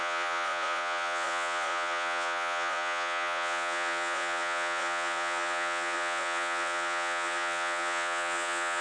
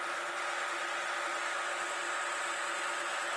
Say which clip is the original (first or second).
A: second